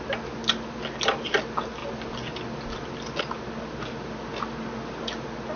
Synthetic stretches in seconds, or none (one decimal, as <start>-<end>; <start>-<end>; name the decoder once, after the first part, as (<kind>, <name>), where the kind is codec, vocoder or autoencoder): none